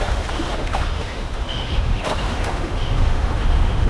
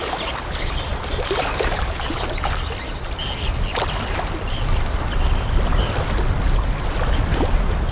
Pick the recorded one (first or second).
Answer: second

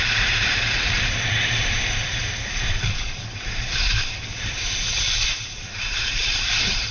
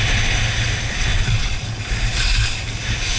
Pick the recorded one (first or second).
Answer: second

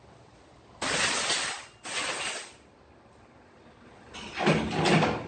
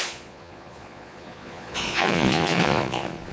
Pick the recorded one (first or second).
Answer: first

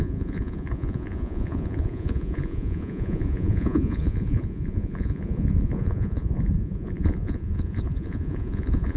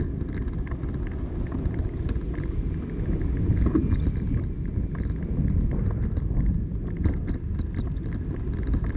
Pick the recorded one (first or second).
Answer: second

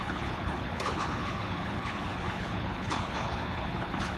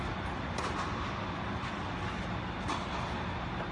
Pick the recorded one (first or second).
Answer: second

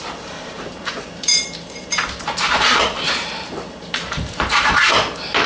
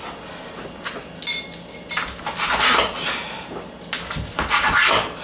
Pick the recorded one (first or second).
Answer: second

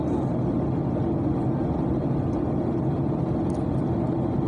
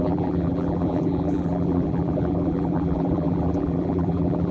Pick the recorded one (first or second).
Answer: first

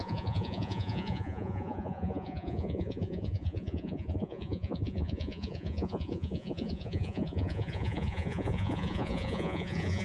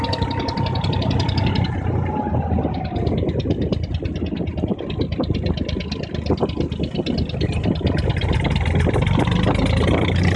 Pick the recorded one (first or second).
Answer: second